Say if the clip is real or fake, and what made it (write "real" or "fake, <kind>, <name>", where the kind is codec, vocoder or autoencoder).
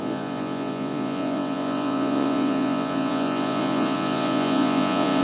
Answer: fake, vocoder, Vocos